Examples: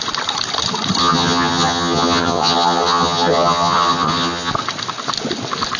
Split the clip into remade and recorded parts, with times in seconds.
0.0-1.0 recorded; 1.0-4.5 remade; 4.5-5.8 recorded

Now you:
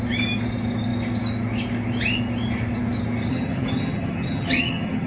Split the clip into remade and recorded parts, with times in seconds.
0.0-3.3 recorded; 3.3-5.1 remade

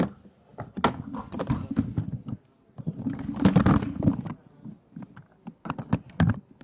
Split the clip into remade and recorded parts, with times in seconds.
0.0-6.6 recorded